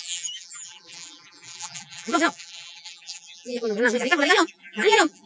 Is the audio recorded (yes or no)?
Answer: no